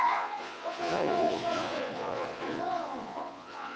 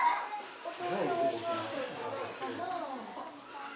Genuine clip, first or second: second